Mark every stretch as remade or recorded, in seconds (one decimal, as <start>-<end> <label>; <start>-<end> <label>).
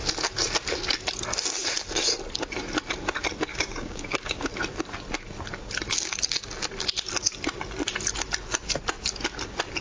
0.0-3.5 recorded; 3.5-4.5 remade; 4.5-9.8 recorded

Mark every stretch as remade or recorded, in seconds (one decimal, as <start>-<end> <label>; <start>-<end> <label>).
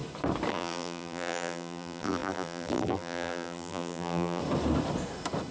0.0-0.5 recorded; 0.5-4.4 remade; 4.4-5.5 recorded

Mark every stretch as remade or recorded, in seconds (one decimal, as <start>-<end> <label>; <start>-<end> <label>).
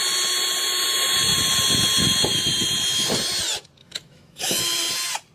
0.0-3.8 recorded; 3.8-4.6 remade; 4.6-5.3 recorded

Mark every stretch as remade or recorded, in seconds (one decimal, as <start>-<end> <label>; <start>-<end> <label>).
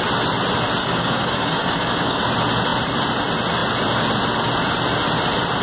0.0-0.8 recorded; 0.8-2.2 remade; 2.2-5.6 recorded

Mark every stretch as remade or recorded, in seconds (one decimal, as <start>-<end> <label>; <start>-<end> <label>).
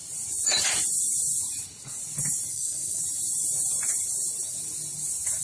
0.0-2.5 recorded; 2.5-3.0 remade; 3.0-5.4 recorded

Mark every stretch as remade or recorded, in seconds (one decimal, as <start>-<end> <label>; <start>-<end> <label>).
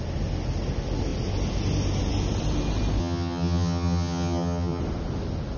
0.0-3.0 recorded; 3.0-4.8 remade; 4.8-5.6 recorded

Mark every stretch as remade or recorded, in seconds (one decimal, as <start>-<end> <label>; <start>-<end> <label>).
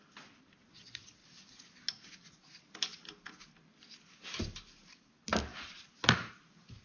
0.0-6.8 recorded